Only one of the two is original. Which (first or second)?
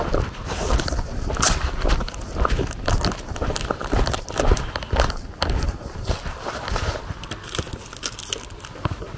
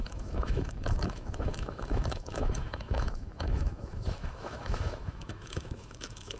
first